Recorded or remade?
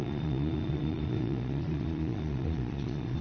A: remade